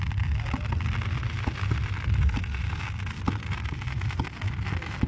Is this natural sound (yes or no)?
yes